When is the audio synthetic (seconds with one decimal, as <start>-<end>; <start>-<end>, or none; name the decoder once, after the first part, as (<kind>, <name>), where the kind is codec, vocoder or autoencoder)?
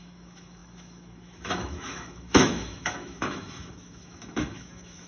0.0-5.1 (autoencoder, DAC-VAE)